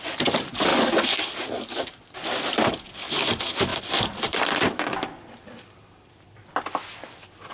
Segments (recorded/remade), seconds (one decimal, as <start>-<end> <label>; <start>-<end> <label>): 0.0-0.7 recorded; 0.7-2.4 remade; 2.4-3.7 recorded; 3.7-6.5 remade; 6.5-7.5 recorded